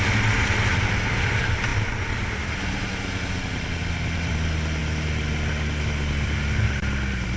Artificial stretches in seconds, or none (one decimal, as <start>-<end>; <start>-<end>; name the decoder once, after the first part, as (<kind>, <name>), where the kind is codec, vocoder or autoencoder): none